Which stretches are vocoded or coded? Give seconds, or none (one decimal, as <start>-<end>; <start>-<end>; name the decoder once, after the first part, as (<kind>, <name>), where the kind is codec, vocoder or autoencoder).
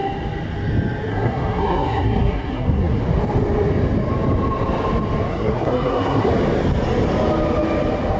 1.1-3.0 (codec, SNAC); 5.3-6.3